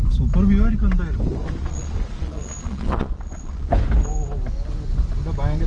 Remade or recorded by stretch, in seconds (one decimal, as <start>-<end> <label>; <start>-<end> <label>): 0.0-1.6 recorded; 1.6-3.7 remade; 3.7-5.7 recorded